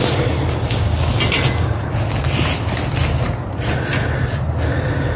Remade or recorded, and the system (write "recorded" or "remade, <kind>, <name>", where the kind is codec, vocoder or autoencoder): recorded